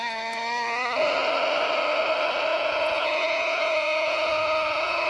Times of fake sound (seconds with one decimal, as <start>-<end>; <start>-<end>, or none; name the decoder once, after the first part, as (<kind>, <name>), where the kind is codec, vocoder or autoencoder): 2.5-5.1 (vocoder, Vocos)